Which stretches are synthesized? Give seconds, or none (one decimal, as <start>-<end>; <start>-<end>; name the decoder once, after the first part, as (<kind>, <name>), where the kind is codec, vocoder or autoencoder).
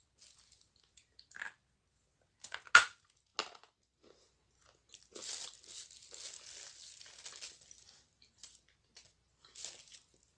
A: none